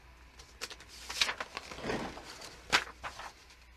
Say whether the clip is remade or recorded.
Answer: recorded